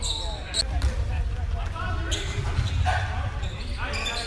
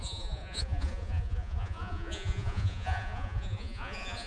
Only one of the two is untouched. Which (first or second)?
first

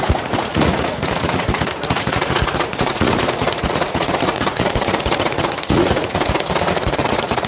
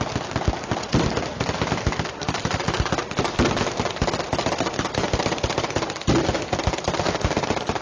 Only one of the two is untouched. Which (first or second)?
second